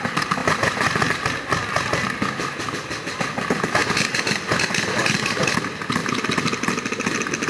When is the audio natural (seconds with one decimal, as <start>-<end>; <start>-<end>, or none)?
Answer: 0.0-7.5